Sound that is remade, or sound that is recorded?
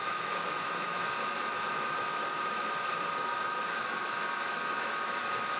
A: remade